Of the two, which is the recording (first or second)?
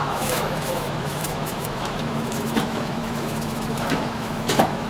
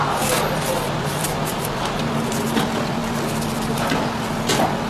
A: second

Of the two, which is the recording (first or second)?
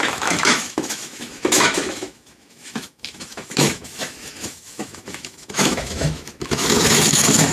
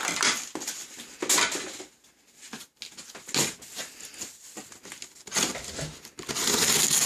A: second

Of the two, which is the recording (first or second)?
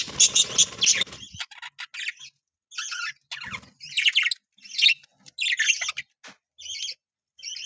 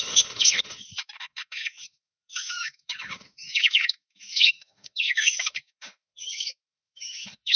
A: first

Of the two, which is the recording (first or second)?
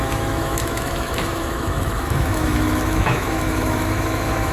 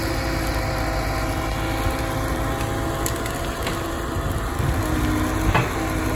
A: second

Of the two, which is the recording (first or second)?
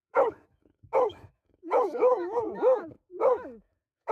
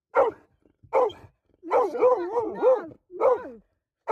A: second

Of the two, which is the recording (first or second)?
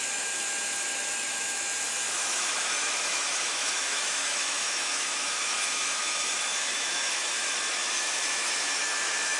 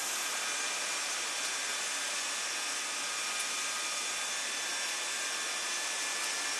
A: second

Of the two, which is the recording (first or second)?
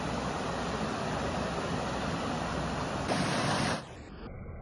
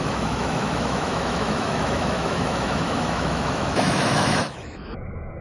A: first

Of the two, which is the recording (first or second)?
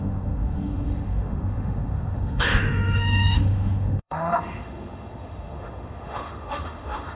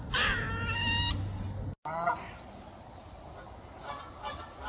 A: second